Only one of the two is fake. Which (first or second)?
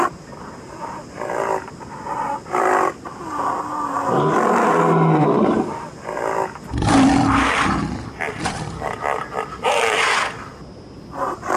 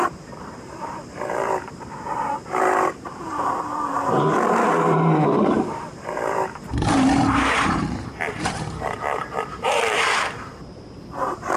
second